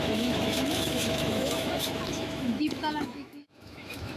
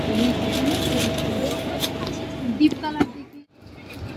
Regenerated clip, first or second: first